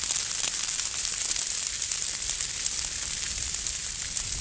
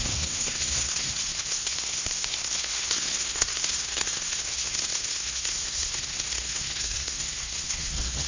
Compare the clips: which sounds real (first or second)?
first